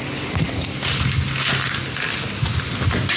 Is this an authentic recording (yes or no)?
yes